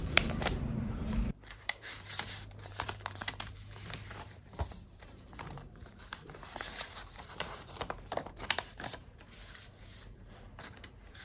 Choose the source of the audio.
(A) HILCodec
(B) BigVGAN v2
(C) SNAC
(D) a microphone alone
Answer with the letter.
B